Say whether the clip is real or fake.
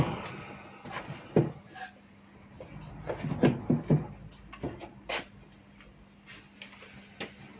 real